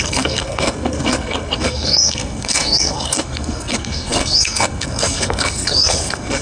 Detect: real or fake fake